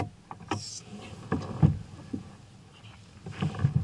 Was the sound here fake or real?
real